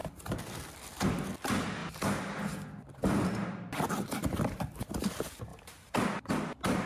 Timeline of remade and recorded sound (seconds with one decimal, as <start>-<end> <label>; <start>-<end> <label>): 0.0-6.9 recorded